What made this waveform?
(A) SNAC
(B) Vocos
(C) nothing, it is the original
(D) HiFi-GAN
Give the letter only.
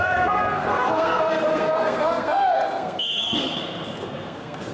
A